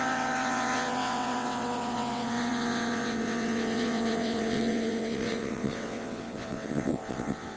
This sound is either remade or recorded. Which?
remade